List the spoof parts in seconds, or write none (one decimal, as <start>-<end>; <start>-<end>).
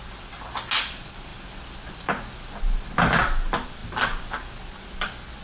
none